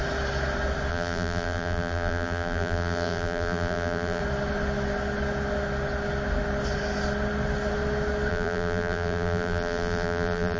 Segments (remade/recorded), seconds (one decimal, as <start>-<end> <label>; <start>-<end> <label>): 0.0-0.9 recorded; 0.9-4.2 remade; 4.2-8.3 recorded; 8.3-10.6 remade